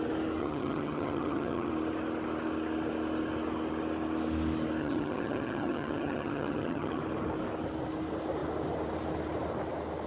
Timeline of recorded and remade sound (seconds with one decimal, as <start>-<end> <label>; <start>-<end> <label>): 0.0-0.4 recorded; 0.4-1.7 remade; 1.7-4.8 recorded; 4.8-7.0 remade; 7.0-10.1 recorded